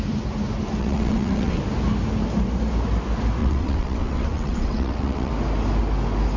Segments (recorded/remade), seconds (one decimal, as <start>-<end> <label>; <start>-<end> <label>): 0.0-0.8 recorded; 0.8-1.6 remade; 1.6-3.4 recorded; 3.4-5.3 remade; 5.3-6.4 recorded